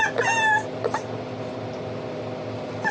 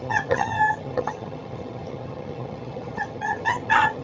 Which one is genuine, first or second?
first